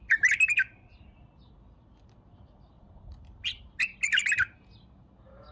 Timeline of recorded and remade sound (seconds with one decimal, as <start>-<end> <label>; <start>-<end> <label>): 0.0-5.5 recorded